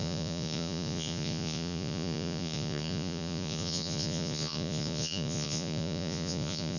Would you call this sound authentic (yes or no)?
no